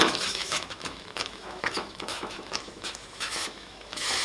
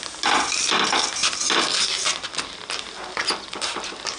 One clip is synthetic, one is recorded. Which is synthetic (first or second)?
first